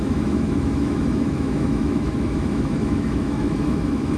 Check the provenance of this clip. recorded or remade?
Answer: remade